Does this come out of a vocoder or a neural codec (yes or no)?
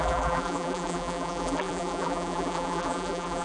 yes